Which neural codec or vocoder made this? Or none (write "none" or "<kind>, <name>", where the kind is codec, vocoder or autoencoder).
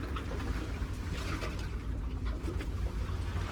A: vocoder, BigVGAN v2